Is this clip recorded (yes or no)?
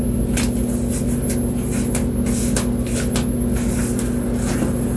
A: yes